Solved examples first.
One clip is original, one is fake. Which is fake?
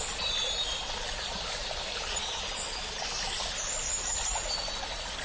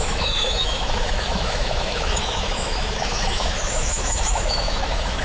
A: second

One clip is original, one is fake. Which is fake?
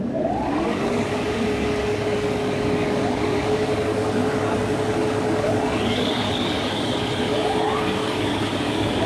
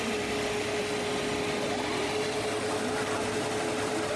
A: first